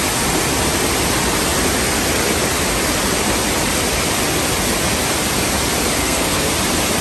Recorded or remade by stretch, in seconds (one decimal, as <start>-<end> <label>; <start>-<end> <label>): 0.0-6.0 recorded; 6.0-6.5 remade; 6.5-7.0 recorded